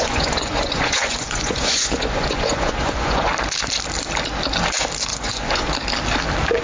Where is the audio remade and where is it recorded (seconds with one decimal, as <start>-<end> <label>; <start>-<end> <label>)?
0.0-3.3 remade; 3.3-5.1 recorded; 5.1-5.7 remade; 5.7-6.6 recorded